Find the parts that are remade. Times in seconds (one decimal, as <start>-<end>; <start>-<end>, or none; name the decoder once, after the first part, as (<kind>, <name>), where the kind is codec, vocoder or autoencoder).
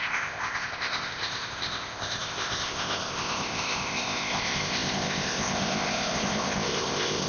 0.0-7.3 (codec, ZipCodec)